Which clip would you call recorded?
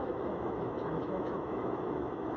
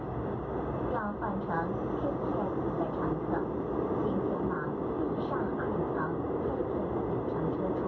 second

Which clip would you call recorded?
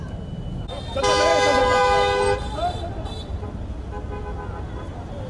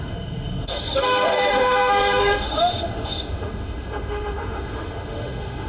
first